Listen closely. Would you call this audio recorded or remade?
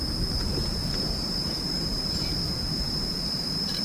remade